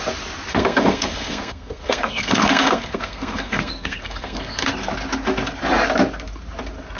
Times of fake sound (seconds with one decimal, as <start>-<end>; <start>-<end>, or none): 0.5-4.7